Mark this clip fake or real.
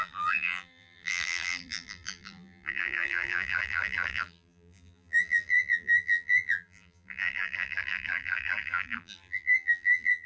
fake